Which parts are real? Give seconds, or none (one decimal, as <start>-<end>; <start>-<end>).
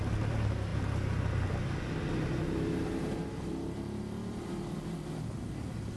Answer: 0.0-6.0